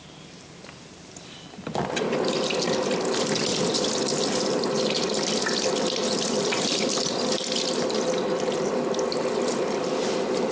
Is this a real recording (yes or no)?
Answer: yes